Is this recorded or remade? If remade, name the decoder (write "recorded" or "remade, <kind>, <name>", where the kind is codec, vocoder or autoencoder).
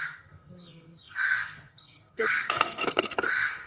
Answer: remade, codec, SNAC